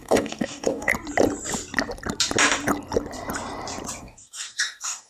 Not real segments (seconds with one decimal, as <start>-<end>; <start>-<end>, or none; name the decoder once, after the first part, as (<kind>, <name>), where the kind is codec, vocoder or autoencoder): 0.0-0.9 (codec, DAC); 4.0-5.1